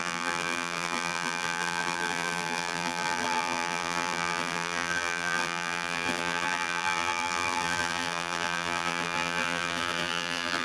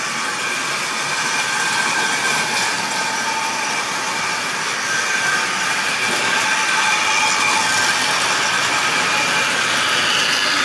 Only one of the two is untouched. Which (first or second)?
second